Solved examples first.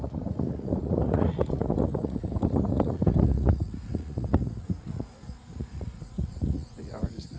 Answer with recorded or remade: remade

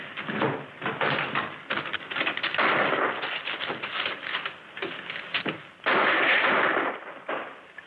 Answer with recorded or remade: recorded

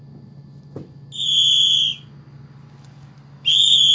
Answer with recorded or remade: recorded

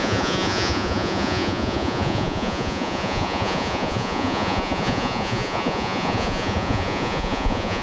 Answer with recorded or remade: remade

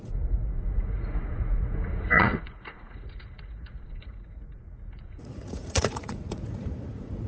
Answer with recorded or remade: remade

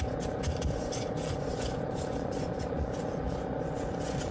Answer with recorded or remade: remade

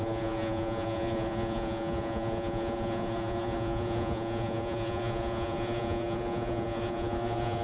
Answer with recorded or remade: remade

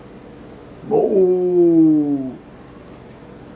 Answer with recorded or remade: recorded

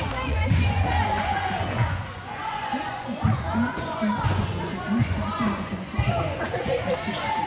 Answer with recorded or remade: remade